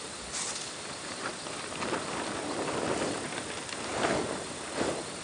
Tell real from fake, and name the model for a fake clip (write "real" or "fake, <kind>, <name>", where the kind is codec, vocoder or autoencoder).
real